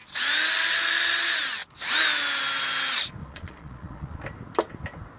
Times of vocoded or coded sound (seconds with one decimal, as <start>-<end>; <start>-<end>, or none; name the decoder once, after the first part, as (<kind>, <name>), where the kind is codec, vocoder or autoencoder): 3.2-4.2 (vocoder, Vocos)